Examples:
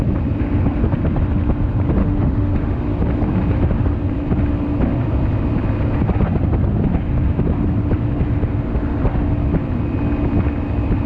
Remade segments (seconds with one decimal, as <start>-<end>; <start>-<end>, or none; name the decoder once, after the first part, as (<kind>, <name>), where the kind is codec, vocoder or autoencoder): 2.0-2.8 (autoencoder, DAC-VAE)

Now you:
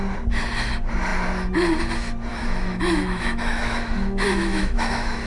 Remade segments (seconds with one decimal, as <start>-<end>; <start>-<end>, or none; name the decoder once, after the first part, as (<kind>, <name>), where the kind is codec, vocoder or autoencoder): 2.3-5.3 (autoencoder, DAC-VAE)

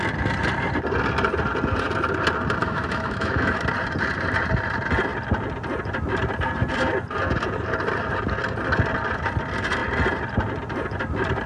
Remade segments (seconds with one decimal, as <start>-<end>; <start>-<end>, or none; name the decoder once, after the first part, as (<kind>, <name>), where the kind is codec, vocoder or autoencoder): 2.6-3.6 (autoencoder, DAC-VAE)

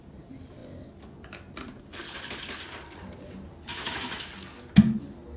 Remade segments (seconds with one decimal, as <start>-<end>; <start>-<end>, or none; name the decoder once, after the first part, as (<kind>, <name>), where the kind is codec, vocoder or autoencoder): 3.7-4.3 (autoencoder, DAC-VAE)

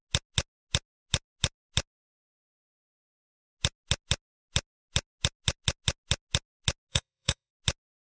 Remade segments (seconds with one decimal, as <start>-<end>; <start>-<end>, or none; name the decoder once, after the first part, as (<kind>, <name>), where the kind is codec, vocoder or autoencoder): 6.9-7.5 (autoencoder, DAC-VAE)

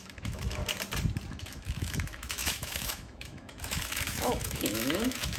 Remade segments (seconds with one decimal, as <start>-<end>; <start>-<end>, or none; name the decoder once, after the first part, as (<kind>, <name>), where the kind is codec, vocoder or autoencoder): 0.0-0.6 (autoencoder, DAC-VAE); 1.3-5.4

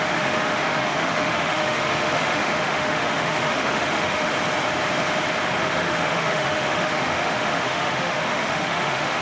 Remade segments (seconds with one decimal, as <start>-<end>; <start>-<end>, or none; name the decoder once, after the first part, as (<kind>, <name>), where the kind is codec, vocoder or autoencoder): 0.0-4.3 (autoencoder, DAC-VAE); 5.6-9.2